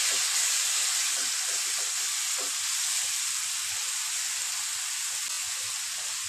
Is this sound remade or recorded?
recorded